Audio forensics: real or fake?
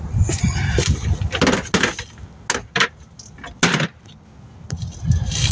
real